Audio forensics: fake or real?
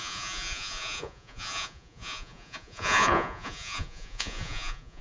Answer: fake